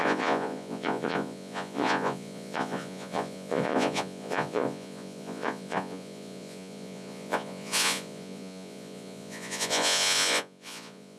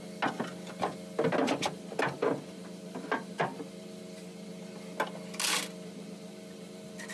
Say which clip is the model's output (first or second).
first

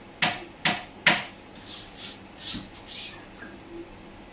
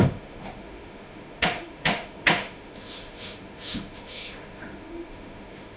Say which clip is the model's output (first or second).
second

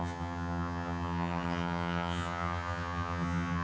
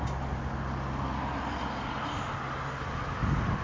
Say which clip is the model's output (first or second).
first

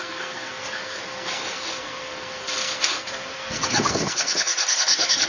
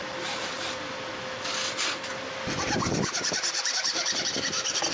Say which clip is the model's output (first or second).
first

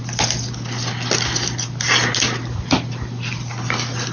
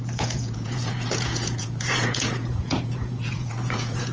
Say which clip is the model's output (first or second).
second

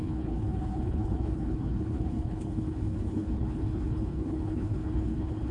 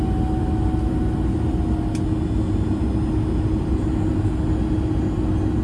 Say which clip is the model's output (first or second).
first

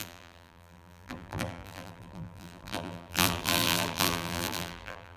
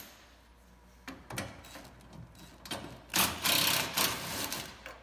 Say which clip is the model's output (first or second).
first